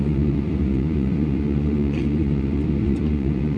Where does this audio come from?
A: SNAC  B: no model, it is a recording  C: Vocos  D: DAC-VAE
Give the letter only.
C